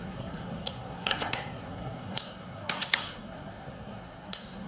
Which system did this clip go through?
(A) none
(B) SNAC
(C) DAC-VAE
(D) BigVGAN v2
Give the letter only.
B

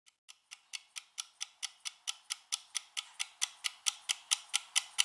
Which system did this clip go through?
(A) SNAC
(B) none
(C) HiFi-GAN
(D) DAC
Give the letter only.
B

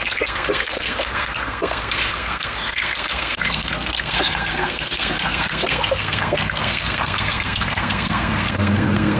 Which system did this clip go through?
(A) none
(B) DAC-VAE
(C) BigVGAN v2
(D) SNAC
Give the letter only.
D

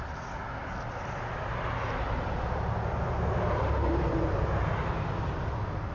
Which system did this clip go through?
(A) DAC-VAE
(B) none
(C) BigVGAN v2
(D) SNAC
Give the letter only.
B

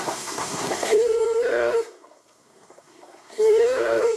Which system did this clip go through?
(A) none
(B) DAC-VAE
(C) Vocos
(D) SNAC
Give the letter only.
D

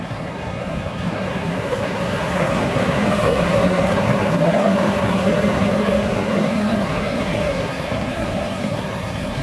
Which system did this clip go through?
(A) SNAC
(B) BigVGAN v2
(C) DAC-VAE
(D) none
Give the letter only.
A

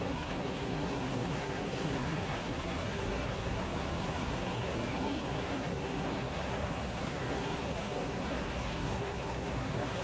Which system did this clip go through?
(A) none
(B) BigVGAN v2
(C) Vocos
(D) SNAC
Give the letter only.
D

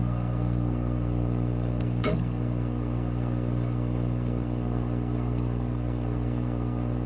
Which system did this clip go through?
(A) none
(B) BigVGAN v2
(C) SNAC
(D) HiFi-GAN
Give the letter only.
C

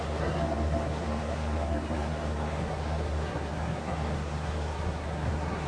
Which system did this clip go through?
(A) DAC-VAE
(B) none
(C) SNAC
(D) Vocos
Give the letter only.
C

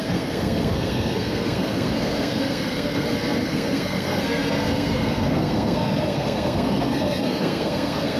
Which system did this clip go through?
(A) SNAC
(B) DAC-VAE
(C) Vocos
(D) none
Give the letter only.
A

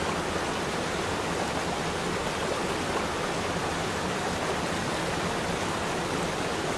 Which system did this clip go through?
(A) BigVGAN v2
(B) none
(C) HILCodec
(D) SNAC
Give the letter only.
B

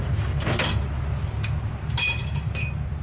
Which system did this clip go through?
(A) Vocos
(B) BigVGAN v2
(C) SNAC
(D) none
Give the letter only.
D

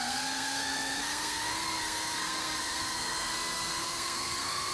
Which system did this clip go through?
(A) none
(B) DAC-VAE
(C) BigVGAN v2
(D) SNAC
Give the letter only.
D